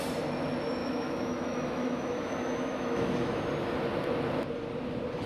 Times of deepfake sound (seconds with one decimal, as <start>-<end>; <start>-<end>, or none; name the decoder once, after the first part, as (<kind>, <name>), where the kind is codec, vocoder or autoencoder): 0.8-3.4 (autoencoder, DAC-VAE)